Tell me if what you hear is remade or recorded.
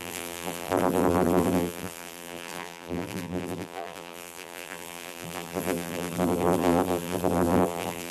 remade